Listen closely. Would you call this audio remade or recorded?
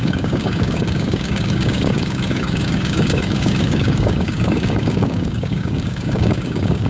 remade